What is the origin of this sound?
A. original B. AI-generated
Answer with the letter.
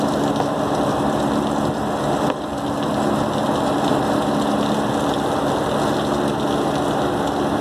A